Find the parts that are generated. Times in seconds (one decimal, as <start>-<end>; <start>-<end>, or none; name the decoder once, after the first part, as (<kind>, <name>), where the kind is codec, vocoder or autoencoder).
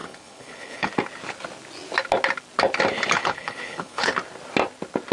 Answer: 0.0-0.9 (codec, HILCodec); 3.2-4.1